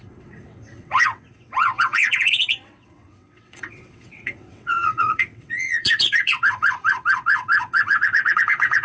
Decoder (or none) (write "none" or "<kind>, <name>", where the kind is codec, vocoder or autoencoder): vocoder, WaveNeXt